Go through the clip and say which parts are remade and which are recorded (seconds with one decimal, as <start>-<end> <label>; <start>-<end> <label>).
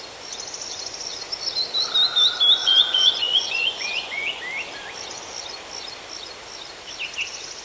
0.0-2.6 recorded; 2.6-4.4 remade; 4.4-7.6 recorded